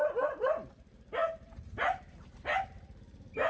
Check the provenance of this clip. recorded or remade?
remade